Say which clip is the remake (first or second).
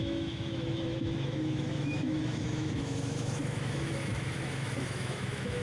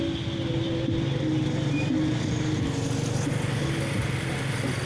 first